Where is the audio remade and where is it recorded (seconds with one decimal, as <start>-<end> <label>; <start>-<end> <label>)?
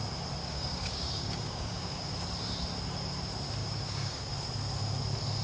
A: 0.0-0.4 recorded; 0.4-2.1 remade; 2.1-3.6 recorded; 3.6-4.3 remade; 4.3-5.4 recorded